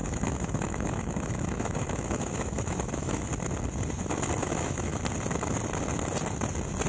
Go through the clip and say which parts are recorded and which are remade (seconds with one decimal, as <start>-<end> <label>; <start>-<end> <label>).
0.0-3.3 remade; 3.3-4.4 recorded; 4.4-5.0 remade; 5.0-6.9 recorded